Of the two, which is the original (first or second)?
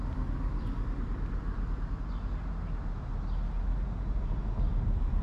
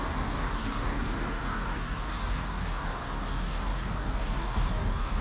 first